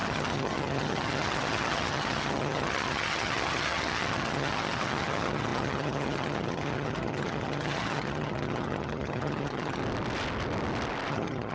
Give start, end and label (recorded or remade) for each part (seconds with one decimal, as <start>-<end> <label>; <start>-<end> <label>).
0.0-9.8 remade; 9.8-11.1 recorded; 11.1-11.5 remade